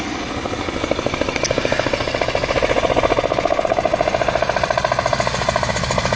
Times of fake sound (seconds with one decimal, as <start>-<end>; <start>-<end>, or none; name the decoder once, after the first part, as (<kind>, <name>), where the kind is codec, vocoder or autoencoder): none